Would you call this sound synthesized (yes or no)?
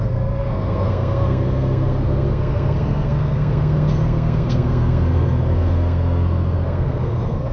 yes